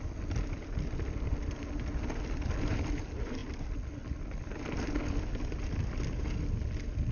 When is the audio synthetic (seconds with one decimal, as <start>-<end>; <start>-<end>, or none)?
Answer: none